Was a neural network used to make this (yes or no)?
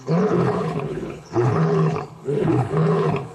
yes